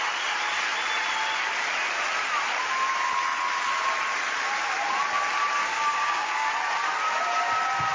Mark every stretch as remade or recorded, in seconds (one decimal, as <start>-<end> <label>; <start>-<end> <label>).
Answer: 0.0-5.6 recorded; 5.6-6.5 remade; 6.5-7.9 recorded